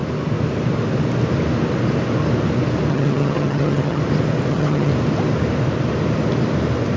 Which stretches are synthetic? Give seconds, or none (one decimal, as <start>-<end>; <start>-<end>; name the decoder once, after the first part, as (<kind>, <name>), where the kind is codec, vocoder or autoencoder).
2.9-4.0 (vocoder, HiFi-GAN); 4.5-4.9